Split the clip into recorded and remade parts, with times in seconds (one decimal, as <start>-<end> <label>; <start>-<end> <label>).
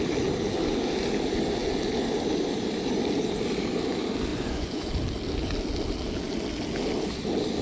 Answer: 0.0-4.3 recorded; 4.3-4.9 remade; 4.9-7.6 recorded